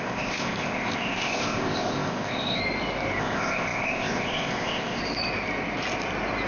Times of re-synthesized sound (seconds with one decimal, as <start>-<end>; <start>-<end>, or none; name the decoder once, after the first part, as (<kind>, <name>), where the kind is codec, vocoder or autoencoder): 0.0-2.6 (codec, ZipCodec); 3.2-5.0